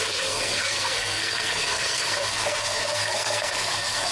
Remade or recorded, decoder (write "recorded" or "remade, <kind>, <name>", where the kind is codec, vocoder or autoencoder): remade, codec, SNAC